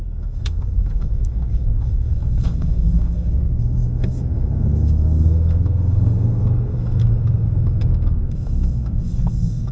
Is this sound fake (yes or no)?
yes